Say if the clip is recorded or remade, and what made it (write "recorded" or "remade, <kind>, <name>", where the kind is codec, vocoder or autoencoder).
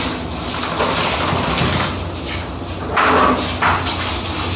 recorded